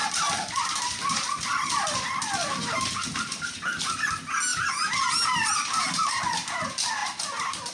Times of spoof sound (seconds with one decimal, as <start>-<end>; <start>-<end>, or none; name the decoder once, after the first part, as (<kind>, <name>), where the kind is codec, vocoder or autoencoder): 4.5-6.1 (vocoder, BigVGAN v2)